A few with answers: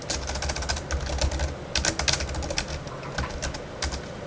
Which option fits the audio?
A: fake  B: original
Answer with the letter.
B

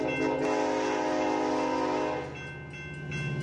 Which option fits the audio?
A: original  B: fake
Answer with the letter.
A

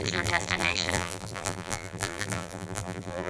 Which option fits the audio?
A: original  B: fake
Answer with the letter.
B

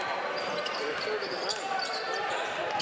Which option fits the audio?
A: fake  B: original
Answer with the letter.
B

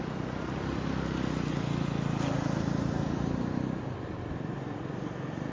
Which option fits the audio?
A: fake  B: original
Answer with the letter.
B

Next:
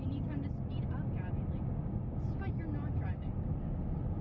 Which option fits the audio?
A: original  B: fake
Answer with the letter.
A